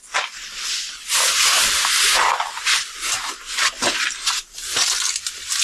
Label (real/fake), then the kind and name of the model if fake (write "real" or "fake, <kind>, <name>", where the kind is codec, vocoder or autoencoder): real